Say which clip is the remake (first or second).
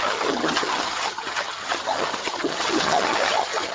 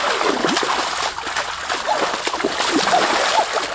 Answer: first